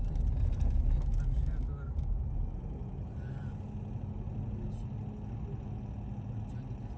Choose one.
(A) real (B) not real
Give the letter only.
A